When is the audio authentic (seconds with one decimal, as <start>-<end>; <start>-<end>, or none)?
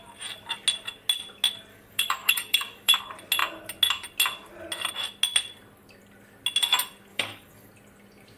0.0-1.7; 3.0-7.1; 7.7-8.4